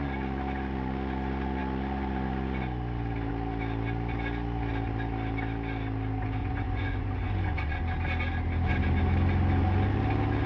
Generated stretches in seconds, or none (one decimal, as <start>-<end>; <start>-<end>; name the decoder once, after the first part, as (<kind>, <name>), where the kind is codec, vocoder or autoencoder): 6.4-7.8 (vocoder, Vocos)